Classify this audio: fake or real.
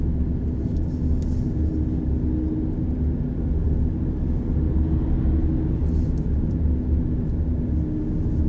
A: real